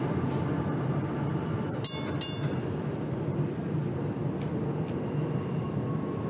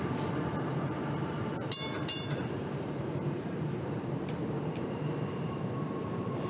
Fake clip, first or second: second